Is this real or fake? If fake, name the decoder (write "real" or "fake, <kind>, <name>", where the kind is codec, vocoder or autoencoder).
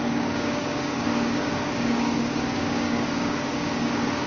fake, codec, DAC